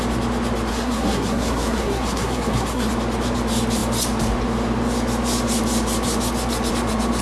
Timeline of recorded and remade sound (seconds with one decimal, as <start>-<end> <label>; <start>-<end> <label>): 0.0-0.7 recorded; 0.7-2.9 remade; 2.9-7.2 recorded